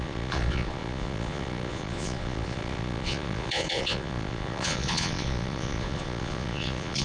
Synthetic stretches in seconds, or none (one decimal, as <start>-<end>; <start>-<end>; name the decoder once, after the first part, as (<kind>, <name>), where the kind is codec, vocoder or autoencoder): 0.0-7.0 (vocoder, Vocos)